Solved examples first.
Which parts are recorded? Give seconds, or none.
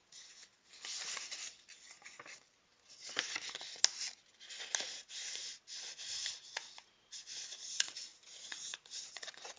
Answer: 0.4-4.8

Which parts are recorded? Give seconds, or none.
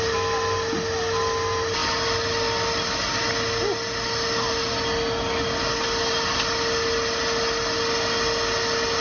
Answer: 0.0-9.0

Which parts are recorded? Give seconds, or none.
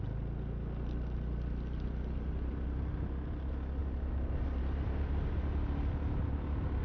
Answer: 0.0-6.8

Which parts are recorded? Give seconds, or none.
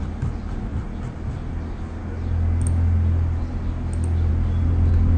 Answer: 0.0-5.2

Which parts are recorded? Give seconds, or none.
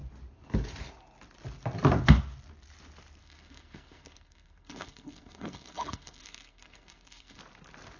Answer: 0.0-3.2; 7.4-8.0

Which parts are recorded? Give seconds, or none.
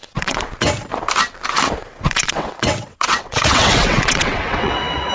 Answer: 0.5-1.8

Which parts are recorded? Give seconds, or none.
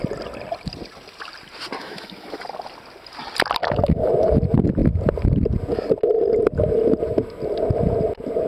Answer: 0.0-1.8; 2.4-3.6; 4.1-8.5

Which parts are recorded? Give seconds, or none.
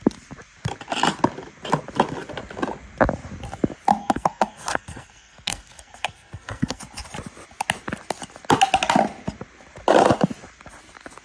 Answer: 0.0-4.0; 6.8-11.2